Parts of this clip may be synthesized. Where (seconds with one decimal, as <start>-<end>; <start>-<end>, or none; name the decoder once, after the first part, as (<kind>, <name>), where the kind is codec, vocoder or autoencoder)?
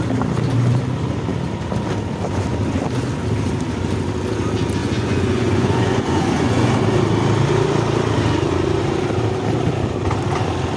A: 4.8-6.7 (vocoder, Vocos)